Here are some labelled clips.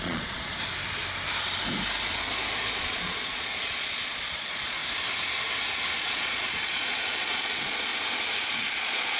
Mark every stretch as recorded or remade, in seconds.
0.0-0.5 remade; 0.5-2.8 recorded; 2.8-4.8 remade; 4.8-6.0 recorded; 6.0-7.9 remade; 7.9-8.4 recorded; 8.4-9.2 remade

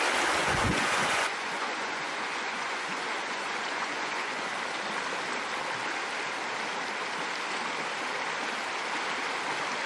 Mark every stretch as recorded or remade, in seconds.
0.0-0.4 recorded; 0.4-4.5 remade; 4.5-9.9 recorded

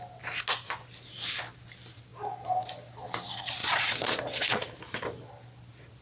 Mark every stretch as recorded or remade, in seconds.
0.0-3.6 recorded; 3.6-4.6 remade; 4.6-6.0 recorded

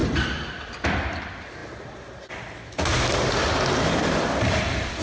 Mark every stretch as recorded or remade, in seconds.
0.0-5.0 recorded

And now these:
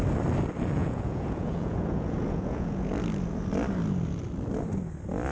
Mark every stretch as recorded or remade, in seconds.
0.0-0.8 recorded; 0.8-2.9 remade; 2.9-5.3 recorded